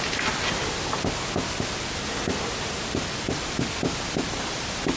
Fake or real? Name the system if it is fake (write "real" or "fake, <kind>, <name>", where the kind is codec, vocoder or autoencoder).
real